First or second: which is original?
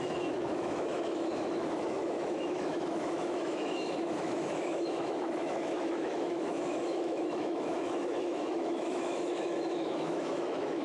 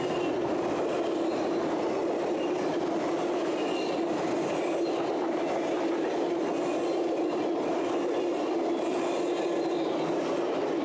second